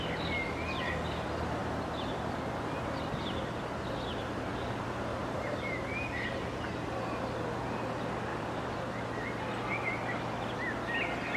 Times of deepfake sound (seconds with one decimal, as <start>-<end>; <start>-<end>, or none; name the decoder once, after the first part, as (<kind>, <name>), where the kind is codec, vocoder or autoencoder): 5.1-7.0 (vocoder, BigVGAN v2); 8.3-9.0